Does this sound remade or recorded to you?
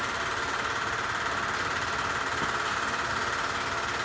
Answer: recorded